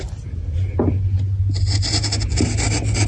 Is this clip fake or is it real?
real